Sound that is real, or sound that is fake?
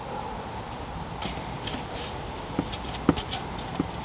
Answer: real